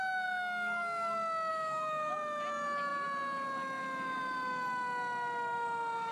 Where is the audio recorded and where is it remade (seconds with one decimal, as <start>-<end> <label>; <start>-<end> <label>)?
0.0-1.5 recorded; 1.5-2.1 remade; 2.1-6.1 recorded